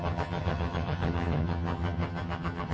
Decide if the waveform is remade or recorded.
remade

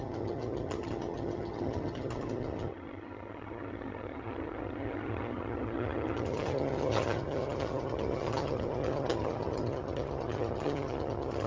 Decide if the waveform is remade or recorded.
remade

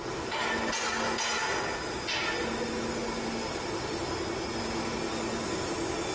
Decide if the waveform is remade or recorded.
recorded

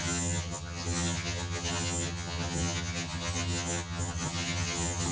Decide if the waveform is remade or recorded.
remade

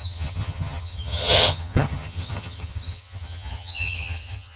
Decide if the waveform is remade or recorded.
remade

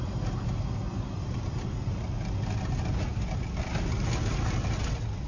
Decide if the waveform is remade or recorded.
recorded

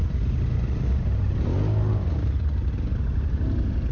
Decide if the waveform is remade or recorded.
recorded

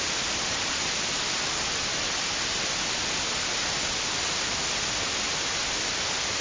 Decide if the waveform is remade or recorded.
recorded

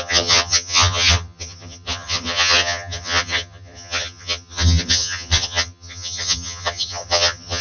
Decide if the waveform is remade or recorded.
remade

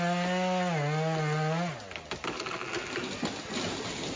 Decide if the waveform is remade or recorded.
recorded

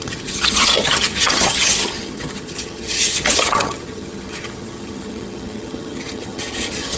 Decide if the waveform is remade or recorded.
remade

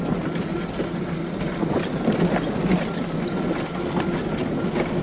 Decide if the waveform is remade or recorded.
recorded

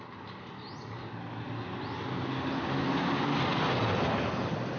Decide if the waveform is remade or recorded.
recorded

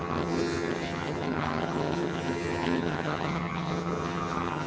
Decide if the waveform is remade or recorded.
remade